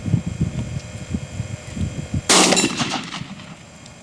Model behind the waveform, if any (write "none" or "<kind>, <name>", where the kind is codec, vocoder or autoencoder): none